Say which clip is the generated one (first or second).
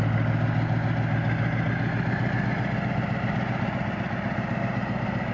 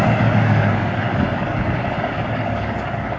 second